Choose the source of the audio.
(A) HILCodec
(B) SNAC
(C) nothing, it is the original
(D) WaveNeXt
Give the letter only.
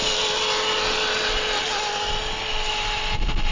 C